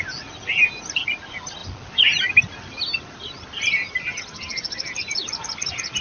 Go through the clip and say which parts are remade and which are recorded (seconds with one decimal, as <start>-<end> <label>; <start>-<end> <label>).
0.0-6.0 recorded